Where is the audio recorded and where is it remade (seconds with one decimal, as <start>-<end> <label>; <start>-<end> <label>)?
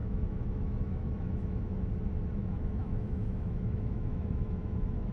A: 0.0-1.9 remade; 1.9-2.4 recorded; 2.4-5.1 remade